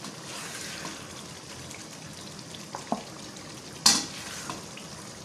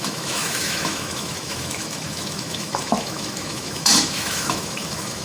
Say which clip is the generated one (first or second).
second